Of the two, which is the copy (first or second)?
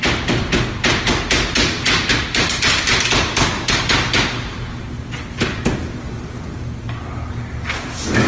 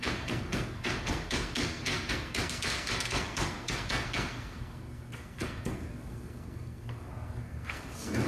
second